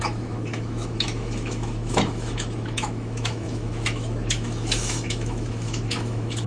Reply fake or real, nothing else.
fake